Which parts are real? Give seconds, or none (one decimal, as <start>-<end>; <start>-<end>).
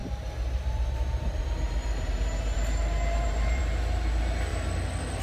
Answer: 1.4-1.8; 3.6-5.2